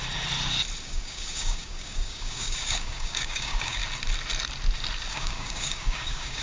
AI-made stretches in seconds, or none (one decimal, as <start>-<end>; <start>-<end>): 0.8-3.8; 5.1-6.4